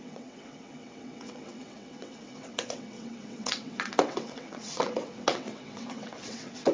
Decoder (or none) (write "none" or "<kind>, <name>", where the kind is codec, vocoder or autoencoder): vocoder, WaveNeXt